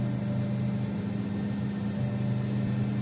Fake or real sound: real